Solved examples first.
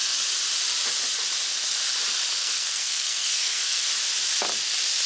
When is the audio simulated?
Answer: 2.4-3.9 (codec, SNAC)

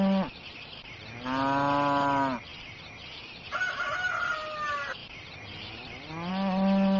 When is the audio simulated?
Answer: none